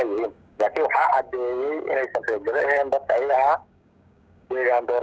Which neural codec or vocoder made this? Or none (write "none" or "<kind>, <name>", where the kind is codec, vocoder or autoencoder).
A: codec, DAC